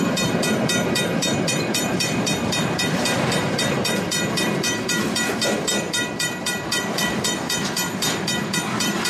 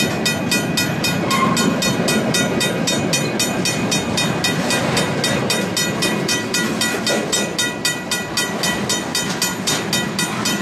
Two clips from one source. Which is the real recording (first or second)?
second